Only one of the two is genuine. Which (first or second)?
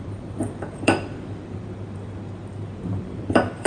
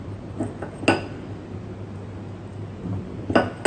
second